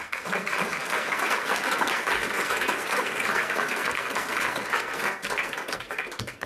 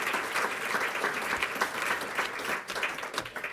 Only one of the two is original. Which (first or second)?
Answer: second